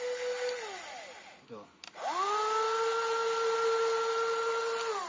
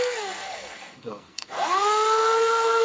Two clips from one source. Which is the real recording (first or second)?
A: first